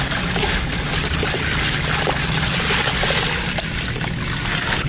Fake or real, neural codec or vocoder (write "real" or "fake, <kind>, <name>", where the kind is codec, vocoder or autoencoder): real